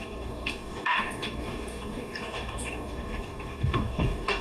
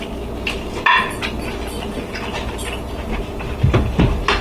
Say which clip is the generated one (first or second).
first